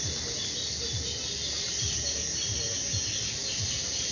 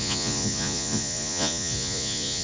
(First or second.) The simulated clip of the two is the second